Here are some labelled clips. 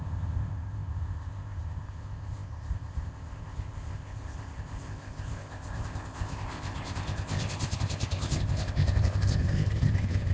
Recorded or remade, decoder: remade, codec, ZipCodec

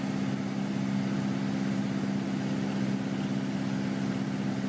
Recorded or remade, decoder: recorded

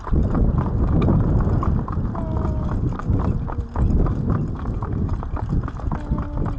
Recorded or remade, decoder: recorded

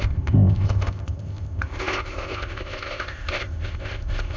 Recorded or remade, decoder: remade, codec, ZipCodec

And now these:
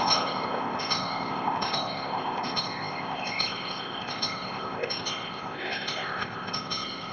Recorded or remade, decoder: remade, codec, ZipCodec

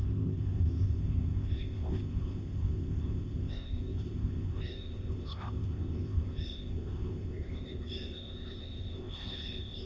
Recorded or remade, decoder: remade, codec, ZipCodec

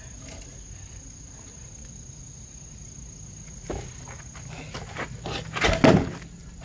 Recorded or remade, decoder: recorded